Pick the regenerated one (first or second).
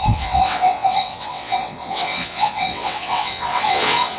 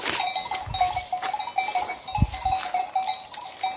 first